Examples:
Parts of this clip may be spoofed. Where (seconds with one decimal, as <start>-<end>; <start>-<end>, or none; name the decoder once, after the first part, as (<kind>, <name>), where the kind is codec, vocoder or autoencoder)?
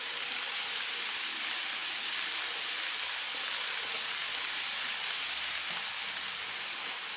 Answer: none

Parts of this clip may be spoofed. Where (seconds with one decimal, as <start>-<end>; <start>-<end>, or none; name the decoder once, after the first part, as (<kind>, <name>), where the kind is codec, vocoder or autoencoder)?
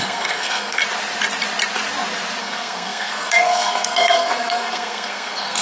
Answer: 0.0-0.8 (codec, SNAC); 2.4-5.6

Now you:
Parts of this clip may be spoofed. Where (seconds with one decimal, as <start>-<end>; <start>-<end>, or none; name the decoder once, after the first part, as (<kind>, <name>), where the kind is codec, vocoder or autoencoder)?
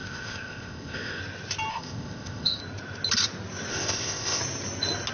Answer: 0.0-1.2 (codec, ZipCodec); 1.7-2.6; 3.7-4.4